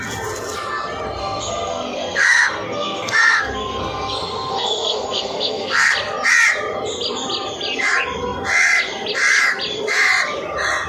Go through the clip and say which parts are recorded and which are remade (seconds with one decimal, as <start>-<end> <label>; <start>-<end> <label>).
0.0-1.2 recorded; 1.2-5.9 remade; 5.9-10.9 recorded